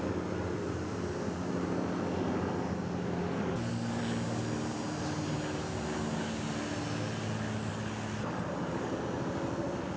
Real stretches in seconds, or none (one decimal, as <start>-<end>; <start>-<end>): 0.0-3.2; 4.0-7.7; 9.0-10.0